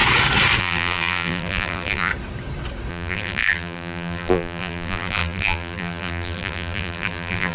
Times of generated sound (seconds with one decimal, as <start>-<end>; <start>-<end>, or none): 0.6-2.1; 2.9-7.5